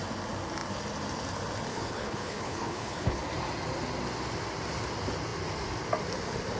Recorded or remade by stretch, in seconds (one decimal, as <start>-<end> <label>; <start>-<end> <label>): 0.0-1.7 recorded; 1.7-3.2 remade; 3.2-6.6 recorded